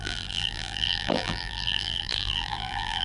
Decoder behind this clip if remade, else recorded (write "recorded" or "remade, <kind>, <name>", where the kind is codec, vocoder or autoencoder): remade, vocoder, BigVGAN v2